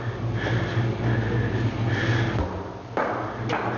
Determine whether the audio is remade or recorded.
recorded